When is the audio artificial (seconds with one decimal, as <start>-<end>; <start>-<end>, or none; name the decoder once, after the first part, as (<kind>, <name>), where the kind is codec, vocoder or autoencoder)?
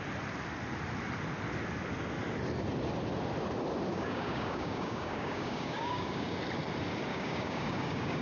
3.9-6.4 (codec, DAC); 7.1-8.2